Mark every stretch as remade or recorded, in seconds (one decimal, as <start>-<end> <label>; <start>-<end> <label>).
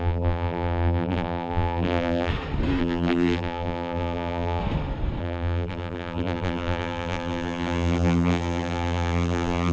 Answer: 0.0-2.3 remade; 2.3-2.8 recorded; 2.8-4.6 remade; 4.6-5.2 recorded; 5.2-9.7 remade